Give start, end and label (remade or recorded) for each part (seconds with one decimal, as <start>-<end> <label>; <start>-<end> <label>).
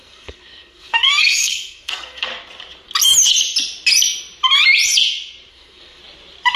0.0-2.3 remade; 2.3-5.5 recorded; 5.5-6.0 remade; 6.0-6.6 recorded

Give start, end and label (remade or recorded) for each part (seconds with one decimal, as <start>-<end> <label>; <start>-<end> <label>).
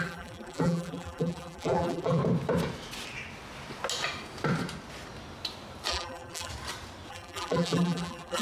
0.0-2.2 remade; 2.2-5.9 recorded; 5.9-6.5 remade; 6.5-7.1 recorded; 7.1-8.4 remade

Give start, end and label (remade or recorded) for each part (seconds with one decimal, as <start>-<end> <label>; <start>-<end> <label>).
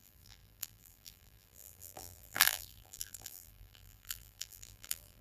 0.0-5.2 remade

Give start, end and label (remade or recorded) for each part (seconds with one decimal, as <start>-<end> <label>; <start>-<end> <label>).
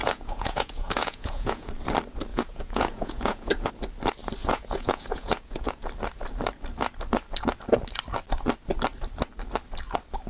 0.0-1.7 remade; 1.7-2.3 recorded; 2.3-3.7 remade; 3.7-4.4 recorded; 4.4-5.8 remade; 5.8-10.3 recorded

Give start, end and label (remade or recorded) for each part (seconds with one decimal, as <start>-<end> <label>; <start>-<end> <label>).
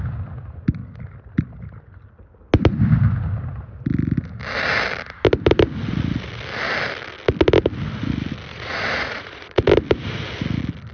0.0-8.5 recorded; 8.5-9.7 remade; 9.7-10.9 recorded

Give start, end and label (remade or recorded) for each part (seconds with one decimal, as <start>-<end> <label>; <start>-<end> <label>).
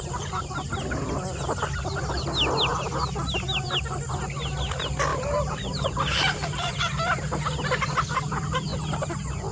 0.0-5.1 recorded; 5.1-6.7 remade; 6.7-9.5 recorded